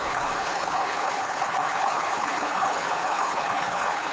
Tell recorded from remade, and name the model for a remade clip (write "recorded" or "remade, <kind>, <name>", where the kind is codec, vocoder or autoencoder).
remade, codec, HILCodec